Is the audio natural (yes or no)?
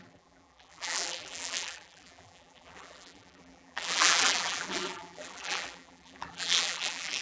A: no